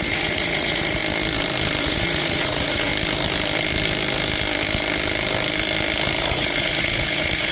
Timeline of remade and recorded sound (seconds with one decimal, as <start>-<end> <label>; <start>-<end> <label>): 0.0-1.0 remade; 1.0-1.8 recorded; 1.8-2.9 remade; 2.9-6.2 recorded; 6.2-7.5 remade